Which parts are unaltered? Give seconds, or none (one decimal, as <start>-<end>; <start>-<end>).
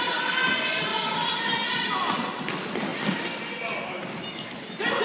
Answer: 0.0-5.0